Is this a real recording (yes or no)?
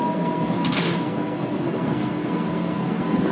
no